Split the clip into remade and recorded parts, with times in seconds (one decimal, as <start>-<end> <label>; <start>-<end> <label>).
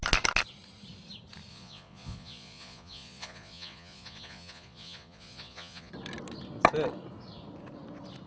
0.0-1.5 recorded; 1.5-5.9 remade; 5.9-8.3 recorded